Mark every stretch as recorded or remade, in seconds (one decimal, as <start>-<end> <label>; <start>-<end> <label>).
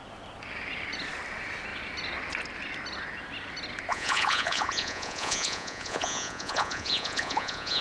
0.0-3.9 recorded; 3.9-7.8 remade